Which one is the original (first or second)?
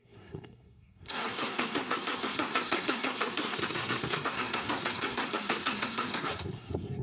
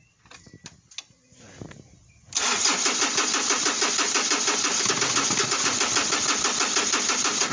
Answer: second